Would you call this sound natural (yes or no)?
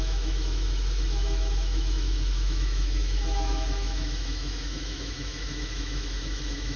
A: no